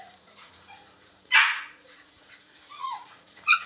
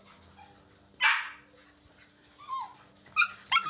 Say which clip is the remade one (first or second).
first